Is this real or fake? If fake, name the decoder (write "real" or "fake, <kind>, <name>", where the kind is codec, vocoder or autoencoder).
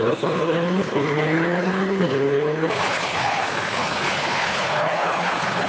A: fake, codec, HILCodec